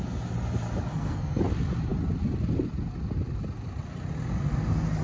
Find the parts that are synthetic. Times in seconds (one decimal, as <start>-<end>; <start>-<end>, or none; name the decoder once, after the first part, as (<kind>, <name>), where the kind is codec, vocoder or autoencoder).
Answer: 0.9-1.4 (codec, SNAC)